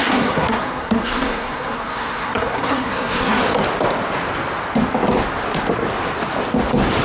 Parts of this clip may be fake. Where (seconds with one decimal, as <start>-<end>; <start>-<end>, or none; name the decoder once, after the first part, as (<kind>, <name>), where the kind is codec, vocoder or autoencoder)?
0.0-3.4 (codec, SNAC)